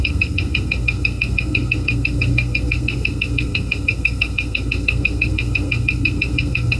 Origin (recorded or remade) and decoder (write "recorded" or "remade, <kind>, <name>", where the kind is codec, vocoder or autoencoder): remade, codec, SNAC